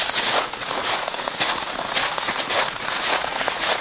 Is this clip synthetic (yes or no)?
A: yes